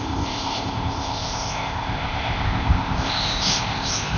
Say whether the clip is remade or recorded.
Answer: remade